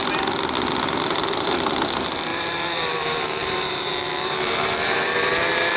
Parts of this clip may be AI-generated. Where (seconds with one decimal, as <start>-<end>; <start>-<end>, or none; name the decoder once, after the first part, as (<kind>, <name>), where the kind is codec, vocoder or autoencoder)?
2.3-5.8 (vocoder, BigVGAN v2)